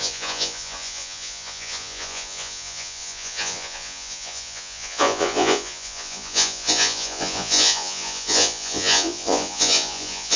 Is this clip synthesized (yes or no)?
yes